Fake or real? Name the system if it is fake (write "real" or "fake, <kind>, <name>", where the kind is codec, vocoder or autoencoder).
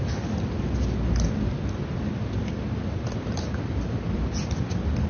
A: real